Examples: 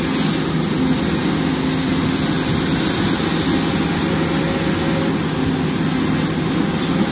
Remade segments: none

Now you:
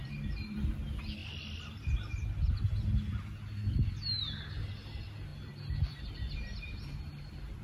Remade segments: 0.0-0.7 (vocoder, BigVGAN v2)

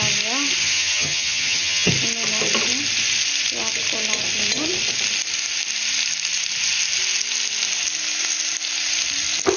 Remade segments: 0.6-1.9 (vocoder, HiFi-GAN)

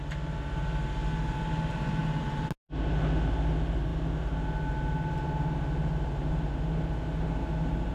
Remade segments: none

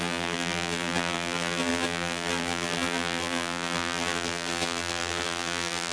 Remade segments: 0.0-5.9 (vocoder, BigVGAN v2)

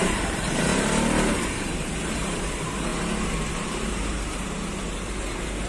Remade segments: 0.0-0.7 (vocoder, BigVGAN v2); 1.5-2.9; 3.5-5.7